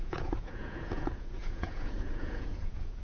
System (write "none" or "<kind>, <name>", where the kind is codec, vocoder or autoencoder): vocoder, Vocos